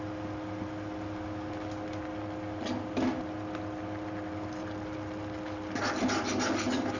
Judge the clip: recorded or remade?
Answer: recorded